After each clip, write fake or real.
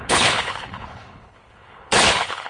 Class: fake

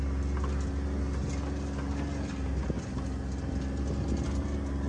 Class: real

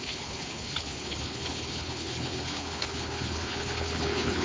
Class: fake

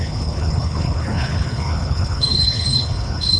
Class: fake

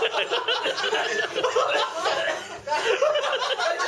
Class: real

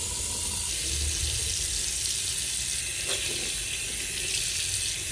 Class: real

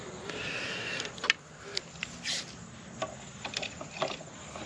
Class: real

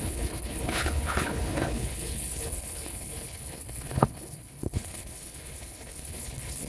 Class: fake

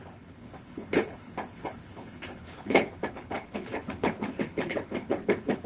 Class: fake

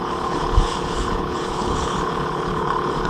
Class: fake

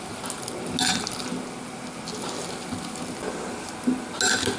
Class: real